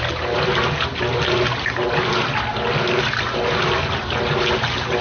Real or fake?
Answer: real